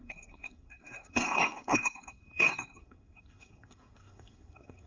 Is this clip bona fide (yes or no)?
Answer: no